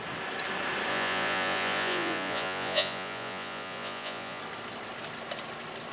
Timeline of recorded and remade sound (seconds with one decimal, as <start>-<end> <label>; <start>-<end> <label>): 0.0-0.9 recorded; 0.9-4.4 remade; 4.4-5.9 recorded